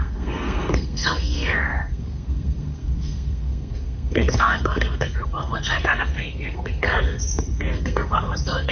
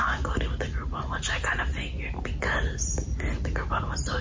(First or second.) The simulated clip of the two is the first